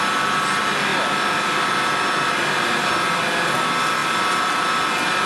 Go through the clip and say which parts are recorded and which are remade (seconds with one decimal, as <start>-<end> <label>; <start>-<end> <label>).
0.0-5.3 recorded